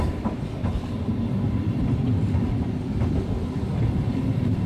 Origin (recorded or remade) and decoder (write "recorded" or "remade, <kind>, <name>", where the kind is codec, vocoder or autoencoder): remade, vocoder, BigVGAN v2